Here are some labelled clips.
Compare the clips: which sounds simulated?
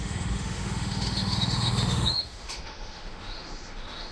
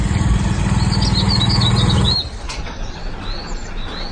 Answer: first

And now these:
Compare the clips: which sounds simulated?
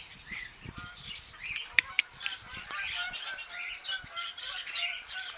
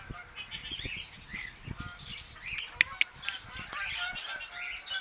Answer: first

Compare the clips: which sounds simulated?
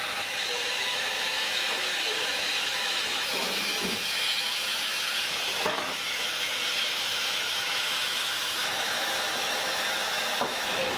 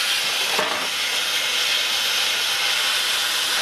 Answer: first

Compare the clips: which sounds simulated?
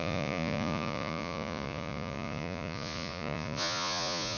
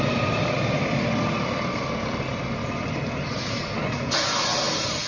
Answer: first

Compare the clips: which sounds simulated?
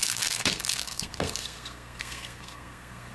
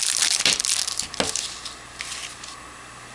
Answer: first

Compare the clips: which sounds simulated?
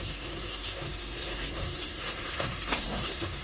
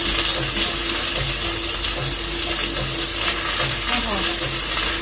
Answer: first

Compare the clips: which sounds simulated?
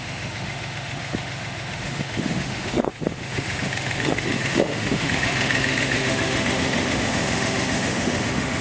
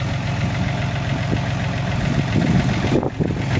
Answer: first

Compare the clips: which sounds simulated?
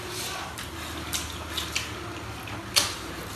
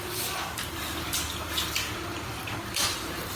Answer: second